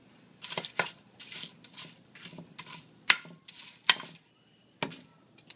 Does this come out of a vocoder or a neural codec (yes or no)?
no